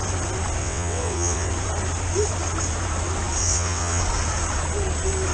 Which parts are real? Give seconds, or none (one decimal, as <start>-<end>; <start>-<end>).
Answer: 0.0-0.6; 1.5-3.4; 4.0-5.3